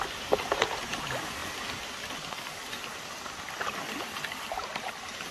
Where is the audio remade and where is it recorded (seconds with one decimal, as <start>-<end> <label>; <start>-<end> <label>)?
0.0-5.3 recorded